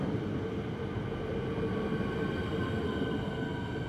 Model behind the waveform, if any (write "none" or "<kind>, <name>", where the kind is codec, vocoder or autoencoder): none